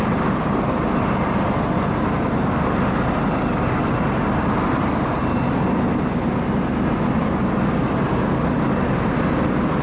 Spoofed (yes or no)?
no